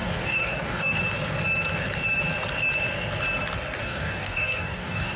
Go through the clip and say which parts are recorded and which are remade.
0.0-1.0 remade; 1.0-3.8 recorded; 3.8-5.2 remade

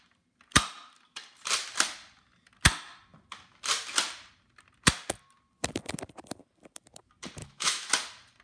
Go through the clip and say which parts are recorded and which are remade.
0.0-7.4 recorded; 7.4-7.9 remade; 7.9-8.4 recorded

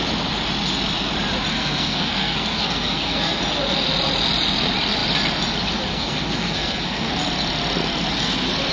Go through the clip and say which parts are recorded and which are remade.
0.0-1.5 recorded; 1.5-3.4 remade; 3.4-5.9 recorded; 5.9-7.1 remade; 7.1-8.7 recorded

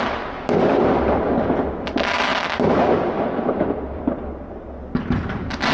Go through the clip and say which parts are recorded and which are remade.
0.0-5.7 recorded

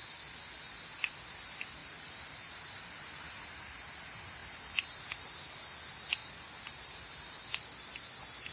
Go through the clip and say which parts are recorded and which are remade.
0.0-1.8 recorded; 1.8-3.6 remade; 3.6-6.2 recorded; 6.2-7.9 remade; 7.9-8.5 recorded

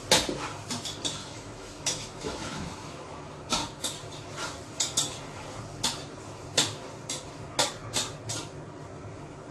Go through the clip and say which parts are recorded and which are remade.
0.0-1.2 recorded; 1.2-3.2 remade; 3.2-9.5 recorded

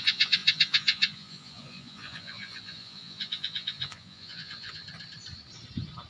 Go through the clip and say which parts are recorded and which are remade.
0.0-4.8 remade; 4.8-6.1 recorded

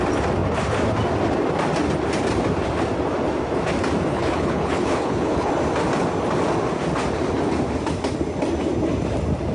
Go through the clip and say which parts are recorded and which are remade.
0.0-4.1 recorded; 4.1-5.5 remade; 5.5-9.5 recorded